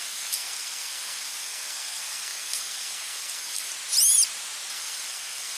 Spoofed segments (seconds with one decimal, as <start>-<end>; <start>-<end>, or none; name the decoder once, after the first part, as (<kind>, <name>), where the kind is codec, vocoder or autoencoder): 0.0-3.7 (codec, SNAC); 4.7-5.6